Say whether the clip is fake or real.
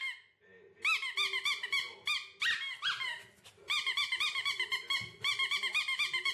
real